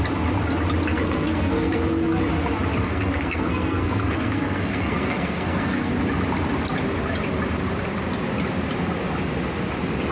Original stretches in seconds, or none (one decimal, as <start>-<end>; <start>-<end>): 0.0-0.9; 1.8-2.8; 5.9-10.1